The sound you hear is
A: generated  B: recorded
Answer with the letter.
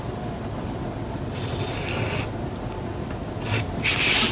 B